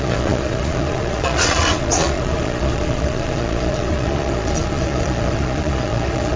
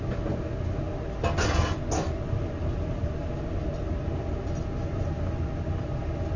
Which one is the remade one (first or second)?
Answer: first